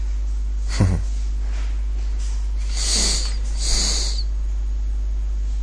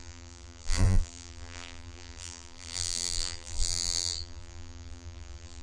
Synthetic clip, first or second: second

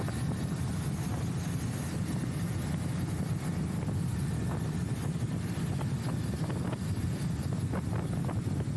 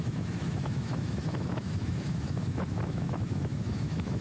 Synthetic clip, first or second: second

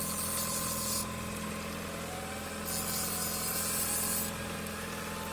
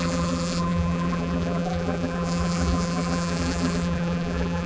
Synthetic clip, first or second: second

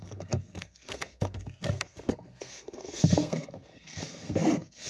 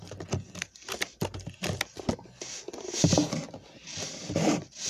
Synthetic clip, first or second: first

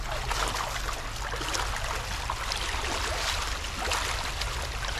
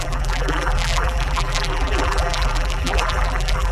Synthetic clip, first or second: second